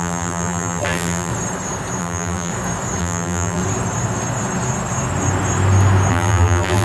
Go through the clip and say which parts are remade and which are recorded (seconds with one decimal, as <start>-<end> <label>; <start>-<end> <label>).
0.0-1.3 remade; 1.3-2.0 recorded; 2.0-2.5 remade; 2.5-3.0 recorded; 3.0-3.6 remade; 3.6-6.1 recorded; 6.1-6.8 remade